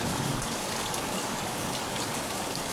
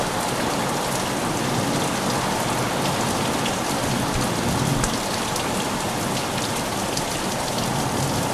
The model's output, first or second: first